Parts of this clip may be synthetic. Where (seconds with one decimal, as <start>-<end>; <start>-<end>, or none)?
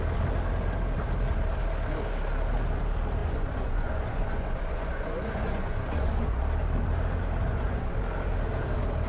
3.2-6.4; 7.5-8.0